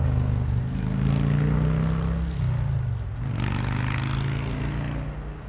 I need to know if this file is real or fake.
real